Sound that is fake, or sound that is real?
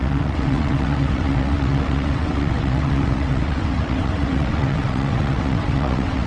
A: fake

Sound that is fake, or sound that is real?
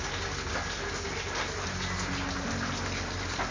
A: real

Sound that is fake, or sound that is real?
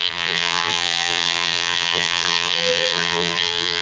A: fake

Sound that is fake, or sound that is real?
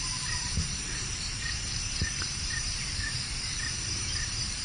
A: fake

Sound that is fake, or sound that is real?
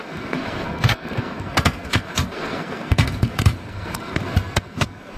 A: fake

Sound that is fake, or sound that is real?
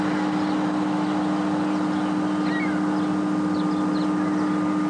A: real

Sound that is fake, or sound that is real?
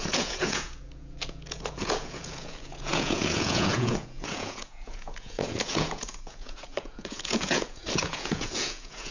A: fake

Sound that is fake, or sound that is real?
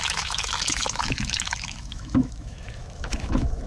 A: fake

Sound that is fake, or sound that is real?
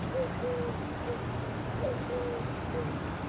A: real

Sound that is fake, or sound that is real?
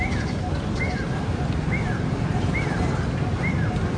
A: real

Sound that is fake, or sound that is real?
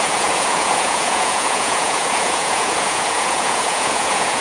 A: fake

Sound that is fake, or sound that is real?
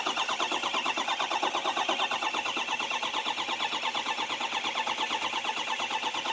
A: real